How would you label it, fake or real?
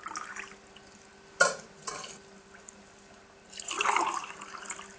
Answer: real